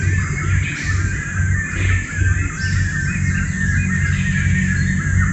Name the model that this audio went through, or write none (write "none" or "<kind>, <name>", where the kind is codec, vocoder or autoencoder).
none